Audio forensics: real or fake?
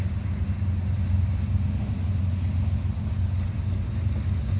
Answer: real